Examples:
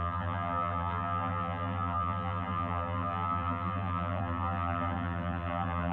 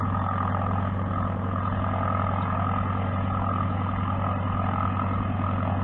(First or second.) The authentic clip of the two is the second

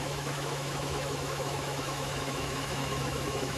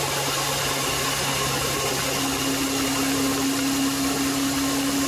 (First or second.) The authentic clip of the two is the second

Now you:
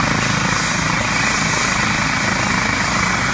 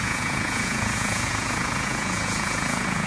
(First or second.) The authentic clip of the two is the first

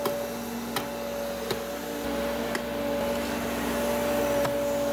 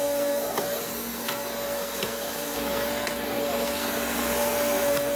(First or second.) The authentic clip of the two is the first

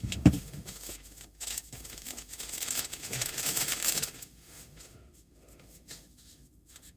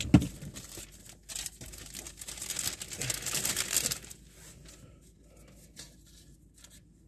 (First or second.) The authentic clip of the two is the second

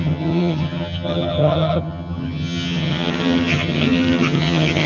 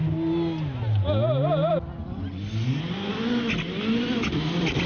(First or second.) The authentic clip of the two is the second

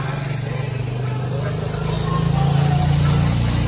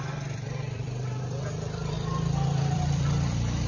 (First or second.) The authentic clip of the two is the first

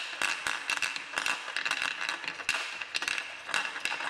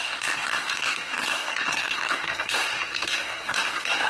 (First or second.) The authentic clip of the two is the first